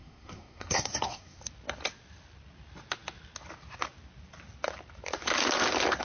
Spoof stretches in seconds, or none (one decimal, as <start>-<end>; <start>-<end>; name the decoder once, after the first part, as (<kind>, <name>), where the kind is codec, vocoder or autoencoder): 0.0-1.4 (codec, SNAC)

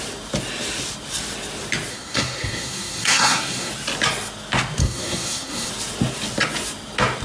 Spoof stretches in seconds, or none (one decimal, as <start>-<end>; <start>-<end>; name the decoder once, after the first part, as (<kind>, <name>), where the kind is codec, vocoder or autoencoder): 1.9-3.7 (codec, SNAC); 4.8-5.7

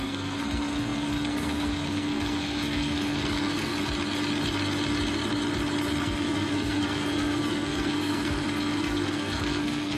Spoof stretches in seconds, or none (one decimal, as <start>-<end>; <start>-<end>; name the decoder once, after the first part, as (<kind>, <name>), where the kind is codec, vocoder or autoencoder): 0.0-3.7 (codec, SNAC); 6.0-10.0

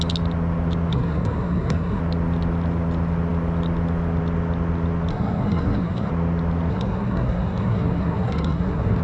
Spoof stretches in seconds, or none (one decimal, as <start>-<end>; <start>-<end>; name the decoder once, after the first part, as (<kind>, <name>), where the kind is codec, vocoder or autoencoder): 0.9-2.0 (codec, SNAC); 5.1-6.1; 6.7-9.0

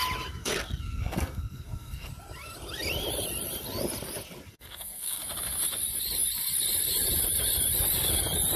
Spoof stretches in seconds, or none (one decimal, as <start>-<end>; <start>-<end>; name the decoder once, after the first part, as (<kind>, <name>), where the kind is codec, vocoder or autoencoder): 0.4-2.1 (codec, SNAC); 4.5-5.2